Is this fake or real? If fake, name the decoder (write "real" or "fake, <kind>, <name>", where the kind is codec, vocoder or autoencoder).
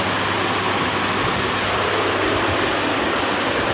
real